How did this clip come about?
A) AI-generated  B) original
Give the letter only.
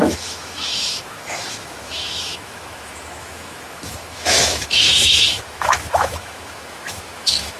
A